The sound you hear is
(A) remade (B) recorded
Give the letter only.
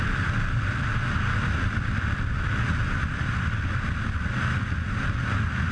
B